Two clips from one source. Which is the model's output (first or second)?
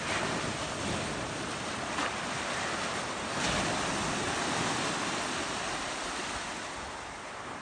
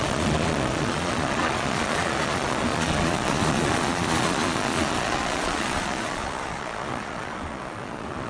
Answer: second